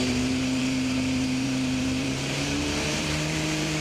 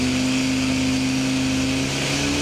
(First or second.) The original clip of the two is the second